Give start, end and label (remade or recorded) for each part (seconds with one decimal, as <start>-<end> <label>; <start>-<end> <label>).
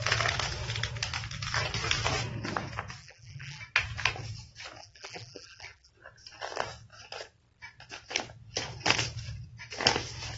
0.0-3.0 recorded; 3.0-3.6 remade; 3.6-4.8 recorded; 4.8-5.9 remade; 5.9-10.4 recorded